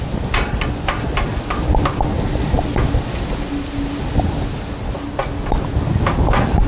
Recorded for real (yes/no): yes